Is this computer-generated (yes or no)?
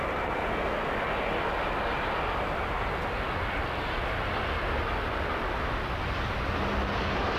no